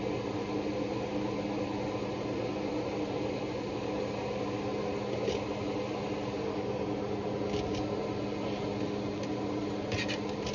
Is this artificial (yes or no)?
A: no